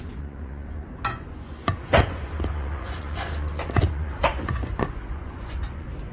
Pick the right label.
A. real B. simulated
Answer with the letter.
B